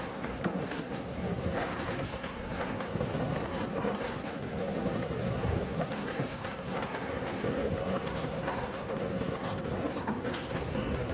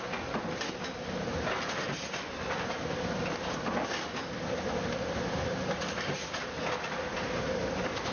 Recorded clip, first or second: second